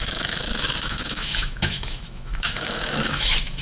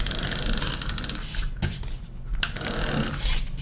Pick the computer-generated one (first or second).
first